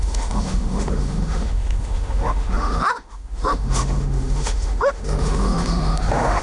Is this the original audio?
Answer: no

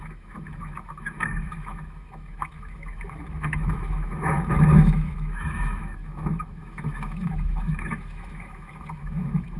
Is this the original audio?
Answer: no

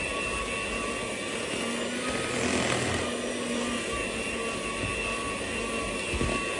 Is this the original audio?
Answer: yes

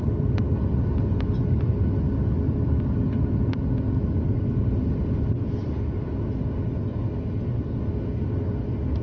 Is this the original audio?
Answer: yes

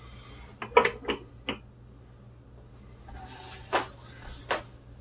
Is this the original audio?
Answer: yes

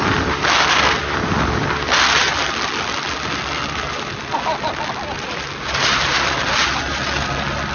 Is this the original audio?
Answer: yes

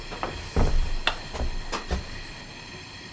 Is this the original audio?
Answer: yes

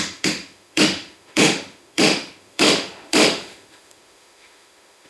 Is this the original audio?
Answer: no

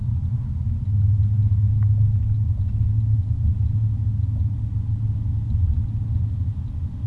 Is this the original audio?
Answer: yes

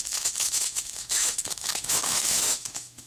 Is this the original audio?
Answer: no